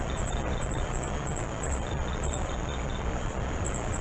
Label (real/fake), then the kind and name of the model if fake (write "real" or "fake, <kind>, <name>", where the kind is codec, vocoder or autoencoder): fake, vocoder, Vocos